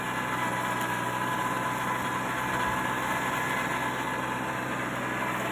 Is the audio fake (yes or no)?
no